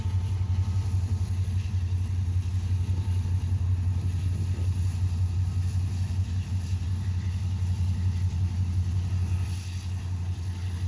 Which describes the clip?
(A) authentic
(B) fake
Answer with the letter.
A